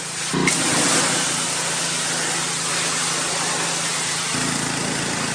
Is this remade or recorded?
recorded